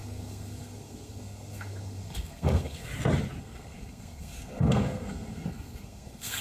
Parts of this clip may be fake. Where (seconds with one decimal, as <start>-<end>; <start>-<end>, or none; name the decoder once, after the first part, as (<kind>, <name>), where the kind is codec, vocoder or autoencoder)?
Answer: 0.0-2.9 (codec, SNAC); 3.4-6.4